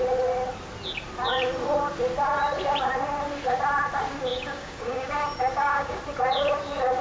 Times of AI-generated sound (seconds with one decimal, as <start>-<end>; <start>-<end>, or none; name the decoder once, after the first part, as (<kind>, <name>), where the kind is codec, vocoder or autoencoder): 4.3-5.1 (codec, DAC); 5.5-6.0

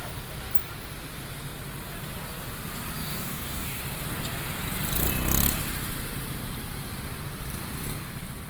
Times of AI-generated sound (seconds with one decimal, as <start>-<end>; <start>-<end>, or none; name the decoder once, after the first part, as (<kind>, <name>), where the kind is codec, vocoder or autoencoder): 3.0-3.8 (codec, DAC)

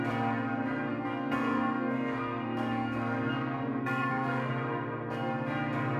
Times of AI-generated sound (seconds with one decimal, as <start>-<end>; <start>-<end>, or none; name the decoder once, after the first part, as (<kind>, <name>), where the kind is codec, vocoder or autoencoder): 0.9-4.5 (codec, SNAC)